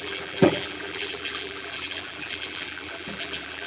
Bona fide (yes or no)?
no